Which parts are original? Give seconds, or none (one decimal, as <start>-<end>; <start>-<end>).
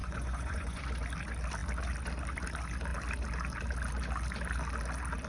0.8-5.3